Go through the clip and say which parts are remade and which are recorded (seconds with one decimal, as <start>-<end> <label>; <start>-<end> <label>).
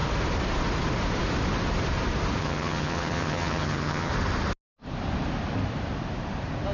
0.0-2.4 recorded; 2.4-4.1 remade; 4.1-6.7 recorded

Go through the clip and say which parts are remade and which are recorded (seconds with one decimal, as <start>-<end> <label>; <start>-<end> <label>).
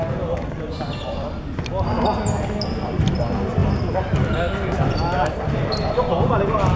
0.0-6.8 recorded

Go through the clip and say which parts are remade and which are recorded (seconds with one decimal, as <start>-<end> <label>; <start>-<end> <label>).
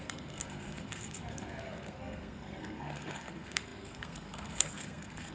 0.0-5.3 remade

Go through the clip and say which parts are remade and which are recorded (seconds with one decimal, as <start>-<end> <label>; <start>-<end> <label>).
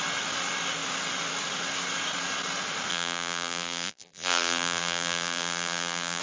0.0-2.9 recorded; 2.9-6.2 remade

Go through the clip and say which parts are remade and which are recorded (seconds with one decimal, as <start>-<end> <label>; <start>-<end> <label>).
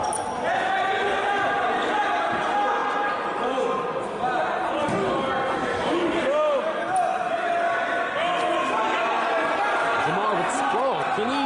0.0-11.5 recorded